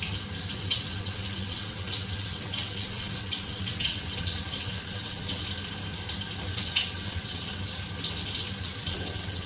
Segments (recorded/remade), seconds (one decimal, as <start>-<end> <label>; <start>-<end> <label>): 0.0-0.5 recorded; 0.5-5.4 remade; 5.4-6.5 recorded; 6.5-7.6 remade; 7.6-8.4 recorded; 8.4-9.5 remade